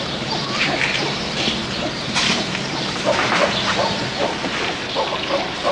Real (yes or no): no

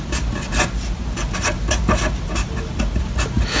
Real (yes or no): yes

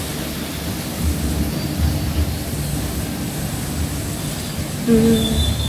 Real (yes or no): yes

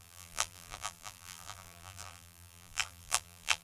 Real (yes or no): no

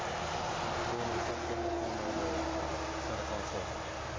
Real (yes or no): yes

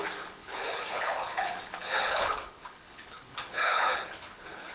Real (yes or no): no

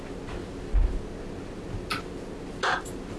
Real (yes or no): yes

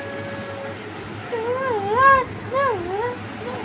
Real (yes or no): yes